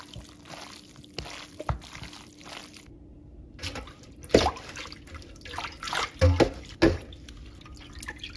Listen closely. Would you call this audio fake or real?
real